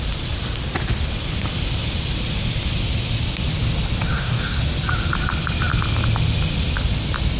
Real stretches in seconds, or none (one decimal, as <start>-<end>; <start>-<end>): 0.0-4.1; 4.6-7.4